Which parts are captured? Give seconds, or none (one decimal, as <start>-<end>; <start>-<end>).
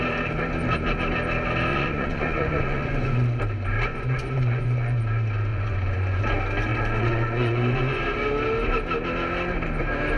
0.0-1.7; 3.4-3.9; 5.0-5.5; 6.2-6.7; 8.0-10.2